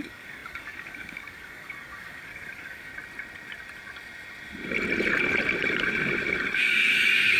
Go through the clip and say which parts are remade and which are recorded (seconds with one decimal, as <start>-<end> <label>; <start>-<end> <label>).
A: 0.0-2.9 remade; 2.9-6.6 recorded; 6.6-7.4 remade